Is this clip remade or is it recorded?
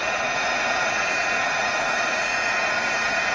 remade